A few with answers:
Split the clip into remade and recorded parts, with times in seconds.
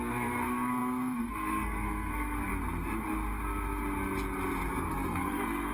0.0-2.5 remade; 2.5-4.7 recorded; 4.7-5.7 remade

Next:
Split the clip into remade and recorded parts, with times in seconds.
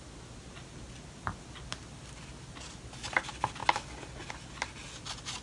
0.0-5.4 recorded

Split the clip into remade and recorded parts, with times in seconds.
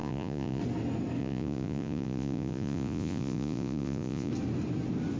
0.0-0.6 remade; 0.6-1.2 recorded; 1.2-4.3 remade; 4.3-5.2 recorded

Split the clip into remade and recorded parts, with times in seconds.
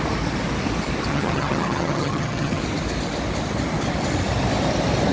0.0-1.1 recorded; 1.1-2.6 remade; 2.6-5.1 recorded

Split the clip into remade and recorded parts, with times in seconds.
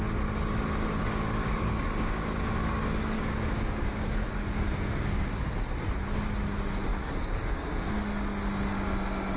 0.0-1.0 recorded; 1.0-5.3 remade; 5.3-6.9 recorded; 6.9-7.9 remade; 7.9-9.4 recorded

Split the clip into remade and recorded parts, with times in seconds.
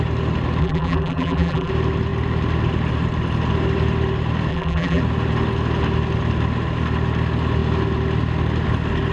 0.0-0.6 recorded; 0.6-1.7 remade; 1.7-4.5 recorded; 4.5-5.0 remade; 5.0-9.1 recorded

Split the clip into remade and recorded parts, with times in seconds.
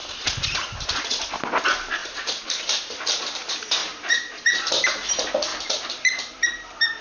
0.0-2.0 recorded; 2.0-3.2 remade; 3.2-3.8 recorded; 3.8-5.1 remade; 5.1-5.5 recorded; 5.5-7.0 remade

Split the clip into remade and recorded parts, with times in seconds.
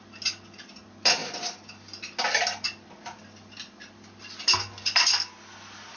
0.0-6.0 recorded